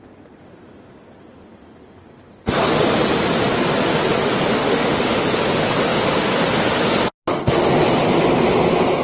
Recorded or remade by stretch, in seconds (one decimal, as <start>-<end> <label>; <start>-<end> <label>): 0.0-4.6 recorded; 4.6-5.2 remade; 5.2-9.0 recorded